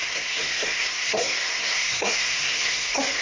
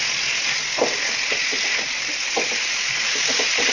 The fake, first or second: first